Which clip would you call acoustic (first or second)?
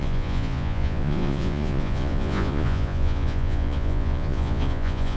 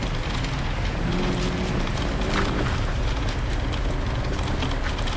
second